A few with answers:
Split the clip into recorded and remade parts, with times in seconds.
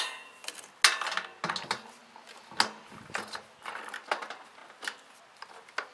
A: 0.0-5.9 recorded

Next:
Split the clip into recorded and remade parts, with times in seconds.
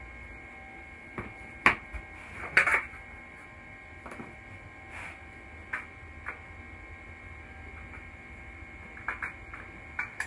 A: 0.0-10.3 recorded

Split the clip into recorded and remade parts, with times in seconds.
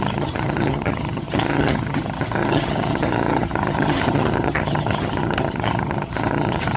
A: 0.0-6.8 remade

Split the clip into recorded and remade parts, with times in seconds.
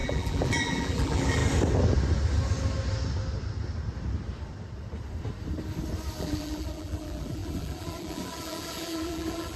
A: 0.0-1.4 remade; 1.4-6.2 recorded; 6.2-9.6 remade